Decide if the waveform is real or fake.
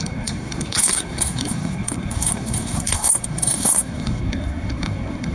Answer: fake